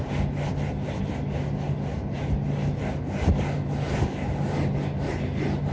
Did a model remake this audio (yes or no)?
no